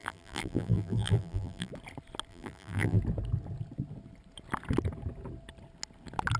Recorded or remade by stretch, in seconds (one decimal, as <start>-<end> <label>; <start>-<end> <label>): 0.0-1.7 remade; 1.7-2.3 recorded; 2.3-3.0 remade; 3.0-6.4 recorded